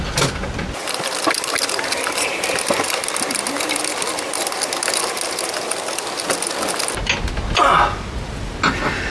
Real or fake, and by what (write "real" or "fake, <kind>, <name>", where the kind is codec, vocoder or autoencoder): real